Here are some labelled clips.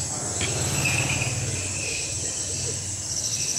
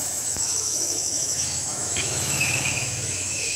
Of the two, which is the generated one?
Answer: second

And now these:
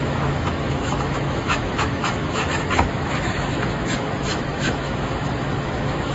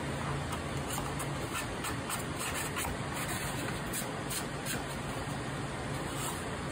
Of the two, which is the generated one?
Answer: first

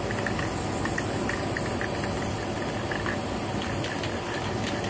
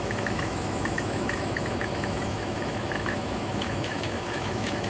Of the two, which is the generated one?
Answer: second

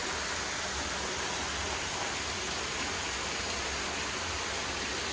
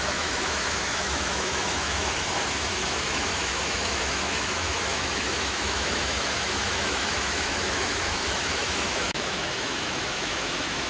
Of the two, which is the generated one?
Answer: second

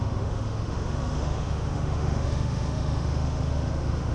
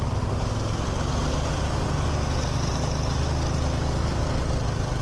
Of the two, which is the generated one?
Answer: first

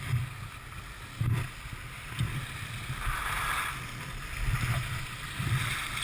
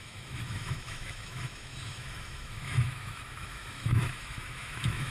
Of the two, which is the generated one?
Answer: second